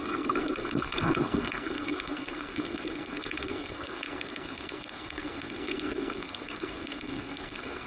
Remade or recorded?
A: remade